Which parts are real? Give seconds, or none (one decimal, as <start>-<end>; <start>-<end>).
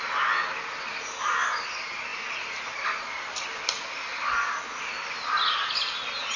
0.0-6.4